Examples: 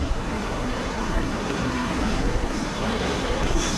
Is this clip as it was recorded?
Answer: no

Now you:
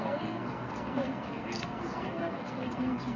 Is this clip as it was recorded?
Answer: no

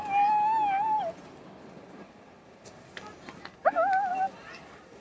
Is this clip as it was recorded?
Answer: yes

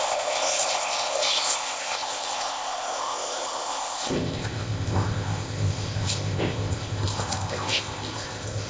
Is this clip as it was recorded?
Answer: no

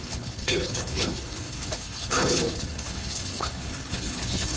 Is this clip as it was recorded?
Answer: no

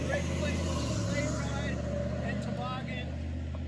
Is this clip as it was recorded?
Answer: yes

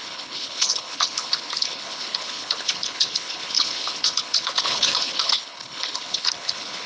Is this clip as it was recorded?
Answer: no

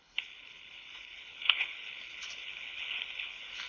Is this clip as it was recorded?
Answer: no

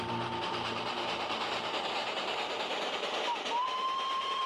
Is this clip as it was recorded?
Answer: no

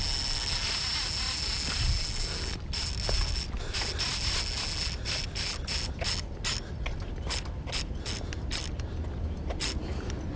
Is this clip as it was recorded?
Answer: yes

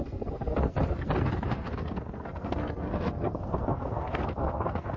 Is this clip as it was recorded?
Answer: no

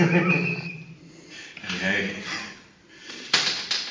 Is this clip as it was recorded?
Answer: no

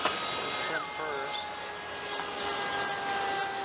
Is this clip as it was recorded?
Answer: yes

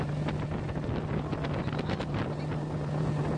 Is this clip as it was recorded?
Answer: yes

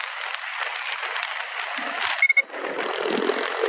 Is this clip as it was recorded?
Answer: yes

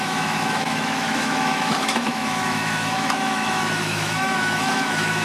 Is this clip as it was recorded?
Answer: no